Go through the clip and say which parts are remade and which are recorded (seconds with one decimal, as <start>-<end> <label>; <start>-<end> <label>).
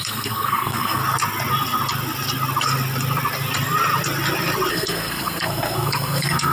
0.0-1.0 remade; 1.0-4.7 recorded; 4.7-6.5 remade